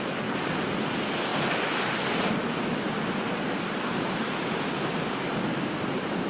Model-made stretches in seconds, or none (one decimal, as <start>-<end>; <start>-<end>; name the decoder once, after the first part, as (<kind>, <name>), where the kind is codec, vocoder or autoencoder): none